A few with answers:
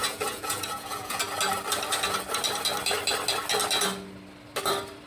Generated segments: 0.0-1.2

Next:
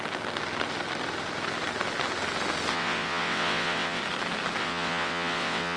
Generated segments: 2.7-4.0; 4.6-5.8

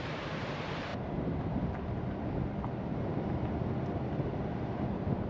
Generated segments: 0.0-0.9; 3.1-5.3

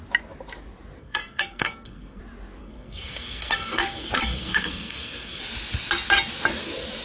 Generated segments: 1.0-2.2; 2.6-5.4

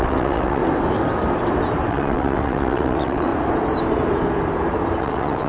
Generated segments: 0.0-0.6; 1.9-3.3; 5.0-5.5

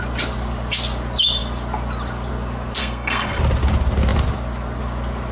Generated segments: 2.8-3.4

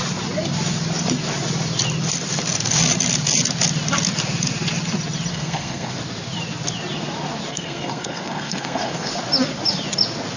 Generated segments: 5.3-5.9; 7.5-9.1

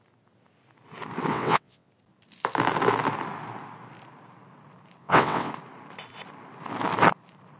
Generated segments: 1.3-1.9; 5.0-5.5